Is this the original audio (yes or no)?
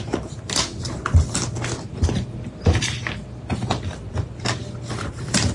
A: yes